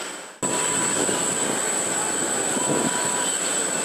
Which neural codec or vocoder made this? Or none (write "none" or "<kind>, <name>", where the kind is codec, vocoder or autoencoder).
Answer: none